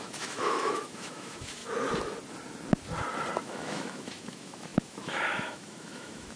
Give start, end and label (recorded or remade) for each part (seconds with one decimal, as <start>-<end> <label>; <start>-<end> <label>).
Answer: 0.0-1.6 remade; 1.6-3.4 recorded; 3.4-6.4 remade